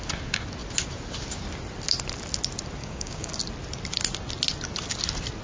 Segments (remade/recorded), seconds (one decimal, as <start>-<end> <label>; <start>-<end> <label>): 0.0-2.8 recorded; 2.8-3.3 remade; 3.3-5.4 recorded